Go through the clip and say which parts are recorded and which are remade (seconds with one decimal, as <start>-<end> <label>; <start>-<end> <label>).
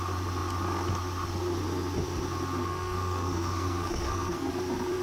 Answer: 0.0-2.6 recorded; 2.6-4.5 remade; 4.5-5.0 recorded